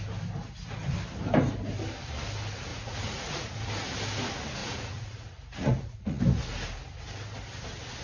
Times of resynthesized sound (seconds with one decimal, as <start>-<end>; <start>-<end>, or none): 2.7-3.7; 4.6-6.2